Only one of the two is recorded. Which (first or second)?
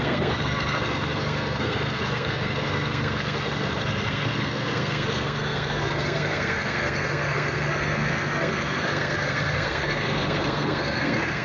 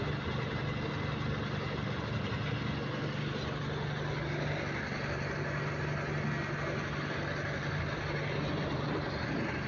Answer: second